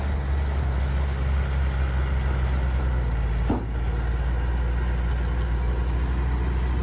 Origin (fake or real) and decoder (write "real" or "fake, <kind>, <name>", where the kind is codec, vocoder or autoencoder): real